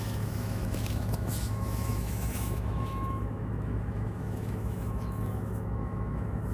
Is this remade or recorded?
remade